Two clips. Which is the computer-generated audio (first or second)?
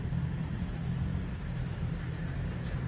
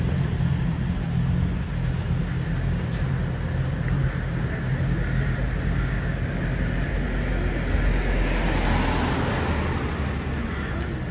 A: first